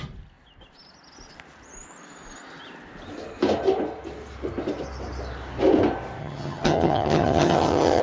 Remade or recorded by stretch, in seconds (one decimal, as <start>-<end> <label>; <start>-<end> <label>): 0.0-6.2 recorded; 6.2-8.0 remade